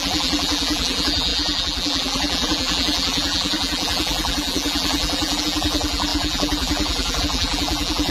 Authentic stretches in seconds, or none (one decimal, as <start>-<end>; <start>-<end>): none